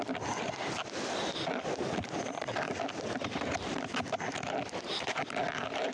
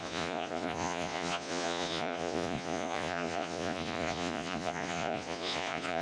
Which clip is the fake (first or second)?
second